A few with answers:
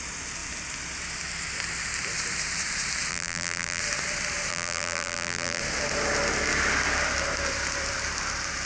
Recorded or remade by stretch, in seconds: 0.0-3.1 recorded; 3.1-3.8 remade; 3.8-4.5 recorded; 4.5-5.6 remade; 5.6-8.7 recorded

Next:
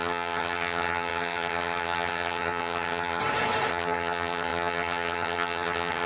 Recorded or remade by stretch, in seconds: 0.0-3.2 remade; 3.2-3.7 recorded; 3.7-6.1 remade